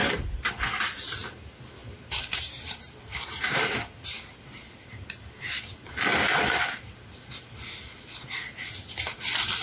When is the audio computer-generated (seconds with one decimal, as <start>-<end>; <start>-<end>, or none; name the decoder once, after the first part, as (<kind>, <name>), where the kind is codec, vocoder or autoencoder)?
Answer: 0.0-0.5 (vocoder, BigVGAN v2); 1.8-5.9